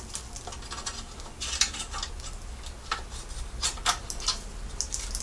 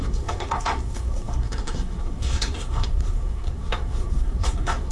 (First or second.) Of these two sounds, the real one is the first